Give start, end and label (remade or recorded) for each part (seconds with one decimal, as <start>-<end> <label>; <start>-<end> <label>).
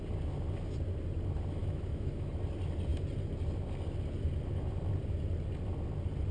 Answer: 0.0-1.6 recorded; 1.6-2.3 remade; 2.3-6.3 recorded